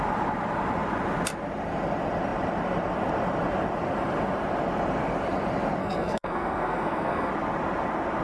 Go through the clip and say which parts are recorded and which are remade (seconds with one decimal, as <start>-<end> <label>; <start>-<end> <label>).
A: 0.0-5.8 recorded; 5.8-7.3 remade; 7.3-8.2 recorded

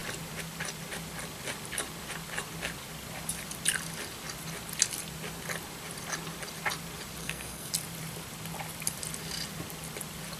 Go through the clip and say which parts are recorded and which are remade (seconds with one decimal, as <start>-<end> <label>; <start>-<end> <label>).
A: 0.0-7.2 recorded; 7.2-7.7 remade; 7.7-10.4 recorded

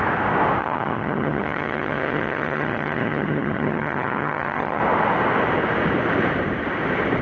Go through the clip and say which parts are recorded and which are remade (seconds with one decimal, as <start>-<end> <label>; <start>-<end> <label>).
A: 0.0-0.6 recorded; 0.6-4.8 remade; 4.8-7.2 recorded

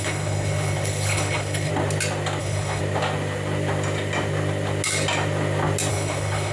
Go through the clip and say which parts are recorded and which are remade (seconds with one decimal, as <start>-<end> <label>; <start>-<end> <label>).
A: 0.0-1.7 remade; 1.7-2.4 recorded; 2.4-2.8 remade; 2.8-5.9 recorded; 5.9-6.5 remade

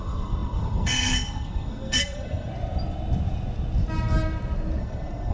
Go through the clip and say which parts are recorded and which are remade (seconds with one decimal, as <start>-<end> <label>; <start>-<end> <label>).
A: 0.0-2.5 remade; 2.5-4.8 recorded; 4.8-5.3 remade

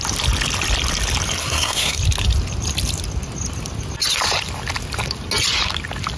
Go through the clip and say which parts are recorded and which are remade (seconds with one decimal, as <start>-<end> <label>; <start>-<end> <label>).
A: 0.0-1.4 recorded; 1.4-2.0 remade; 2.0-6.2 recorded

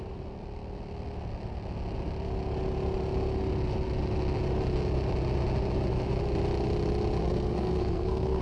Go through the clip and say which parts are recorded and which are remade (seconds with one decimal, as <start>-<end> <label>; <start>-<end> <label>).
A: 0.0-7.2 recorded; 7.2-8.4 remade